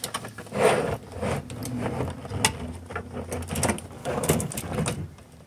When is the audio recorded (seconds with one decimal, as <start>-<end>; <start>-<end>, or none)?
0.0-4.0; 4.5-5.5